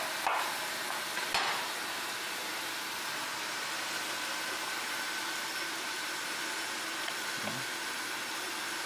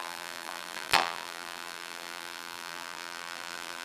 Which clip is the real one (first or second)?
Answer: first